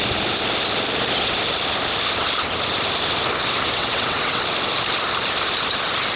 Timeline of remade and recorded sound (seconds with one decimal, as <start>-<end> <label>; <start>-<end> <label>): 0.0-3.8 recorded; 3.8-4.4 remade; 4.4-6.2 recorded